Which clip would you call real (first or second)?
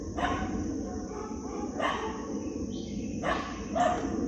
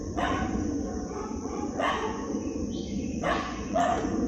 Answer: first